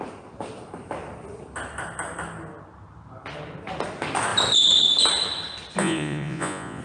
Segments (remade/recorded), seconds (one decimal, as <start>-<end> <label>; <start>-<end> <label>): 0.0-5.8 recorded; 5.8-6.8 remade